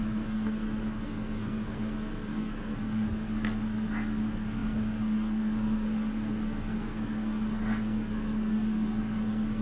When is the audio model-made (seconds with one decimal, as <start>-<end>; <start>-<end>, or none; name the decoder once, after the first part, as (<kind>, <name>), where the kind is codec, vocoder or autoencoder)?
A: 0.0-9.6 (codec, SNAC)

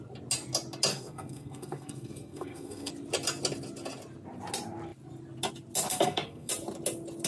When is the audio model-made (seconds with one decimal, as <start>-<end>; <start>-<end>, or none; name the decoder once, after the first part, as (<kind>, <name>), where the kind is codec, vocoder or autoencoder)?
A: 0.9-2.9 (codec, SNAC); 5.9-6.5

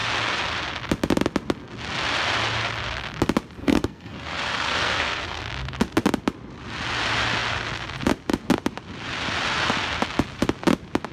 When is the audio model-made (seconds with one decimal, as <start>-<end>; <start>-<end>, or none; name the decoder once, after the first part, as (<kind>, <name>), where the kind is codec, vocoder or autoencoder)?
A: 3.6-5.4 (codec, SNAC)

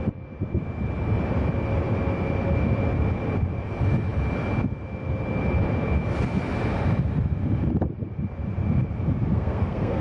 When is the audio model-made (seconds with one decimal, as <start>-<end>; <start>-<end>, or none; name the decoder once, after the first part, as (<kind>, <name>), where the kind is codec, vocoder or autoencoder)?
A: 9.3-10.0 (codec, SNAC)

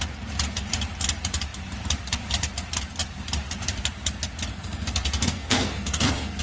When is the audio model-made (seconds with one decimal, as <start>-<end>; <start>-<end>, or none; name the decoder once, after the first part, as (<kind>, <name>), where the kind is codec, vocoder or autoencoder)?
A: 4.5-6.4 (codec, SNAC)